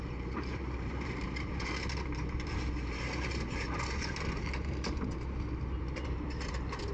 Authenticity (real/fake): fake